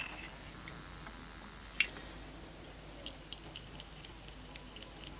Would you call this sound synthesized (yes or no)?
no